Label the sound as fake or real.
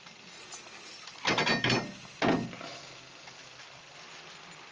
real